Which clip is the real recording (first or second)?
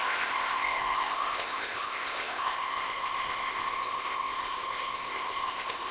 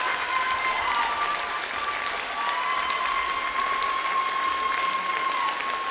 second